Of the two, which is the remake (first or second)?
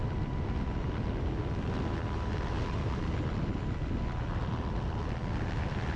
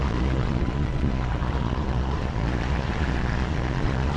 second